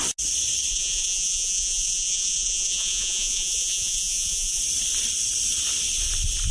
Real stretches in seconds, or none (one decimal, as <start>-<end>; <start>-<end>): 0.0-0.7; 4.6-6.5